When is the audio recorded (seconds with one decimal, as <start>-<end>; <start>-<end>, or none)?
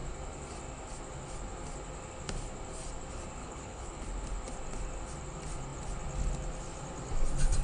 0.0-3.4; 4.0-7.6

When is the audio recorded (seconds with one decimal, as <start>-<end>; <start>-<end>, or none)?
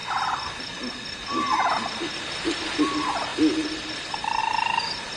0.0-5.2